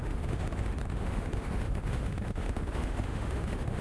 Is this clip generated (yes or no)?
yes